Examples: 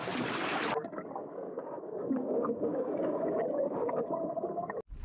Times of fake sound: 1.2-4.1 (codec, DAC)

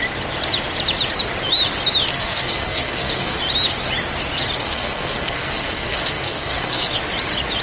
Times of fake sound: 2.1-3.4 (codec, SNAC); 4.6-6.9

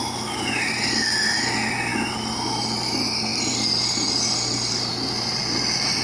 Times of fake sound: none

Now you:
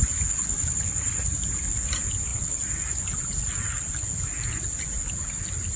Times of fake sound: none